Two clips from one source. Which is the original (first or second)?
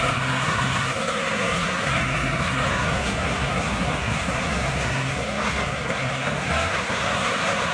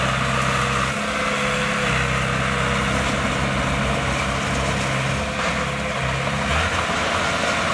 second